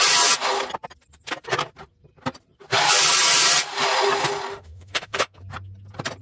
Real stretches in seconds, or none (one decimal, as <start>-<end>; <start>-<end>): 0.0-4.5; 5.4-6.2